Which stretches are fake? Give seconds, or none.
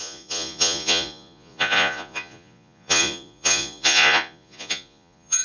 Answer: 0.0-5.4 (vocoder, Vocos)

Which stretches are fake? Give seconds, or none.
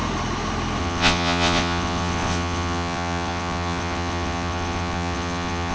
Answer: 0.8-5.7 (vocoder, WaveNeXt)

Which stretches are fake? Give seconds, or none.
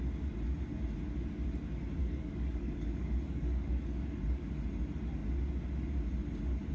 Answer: 2.0-4.6 (codec, DAC)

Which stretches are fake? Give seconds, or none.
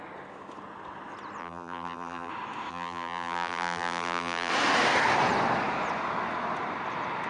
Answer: 1.4-2.3 (vocoder, BigVGAN v2); 2.7-4.5